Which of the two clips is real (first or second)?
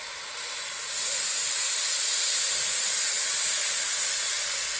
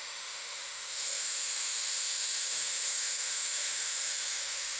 first